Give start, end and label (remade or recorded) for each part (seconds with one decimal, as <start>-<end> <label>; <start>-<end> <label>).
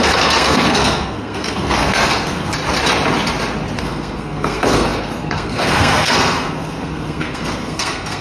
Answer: 0.0-2.5 remade; 2.5-3.8 recorded; 3.8-8.2 remade